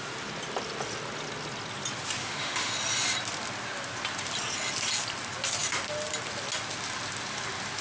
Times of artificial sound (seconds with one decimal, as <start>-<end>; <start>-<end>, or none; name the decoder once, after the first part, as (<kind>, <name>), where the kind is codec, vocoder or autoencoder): 2.2-2.7 (autoencoder, DAC-VAE)